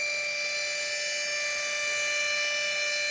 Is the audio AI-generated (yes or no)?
no